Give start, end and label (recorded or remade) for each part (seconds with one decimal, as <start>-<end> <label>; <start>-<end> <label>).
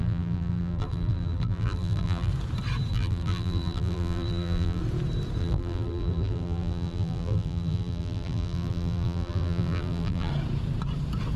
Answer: 0.0-2.3 remade; 2.3-2.9 recorded; 2.9-4.8 remade; 4.8-5.4 recorded; 5.4-10.3 remade; 10.3-11.4 recorded